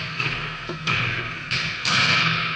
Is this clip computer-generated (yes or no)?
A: yes